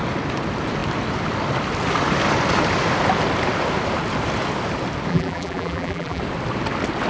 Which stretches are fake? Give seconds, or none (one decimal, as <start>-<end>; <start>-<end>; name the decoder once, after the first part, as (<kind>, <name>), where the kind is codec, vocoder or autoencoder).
5.1-6.2 (vocoder, BigVGAN v2)